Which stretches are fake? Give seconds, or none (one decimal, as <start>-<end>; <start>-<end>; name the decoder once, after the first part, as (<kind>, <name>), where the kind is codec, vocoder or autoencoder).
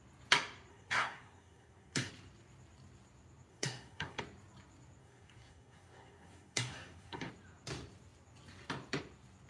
0.7-2.1 (codec, SNAC); 3.5-4.2; 5.0-7.3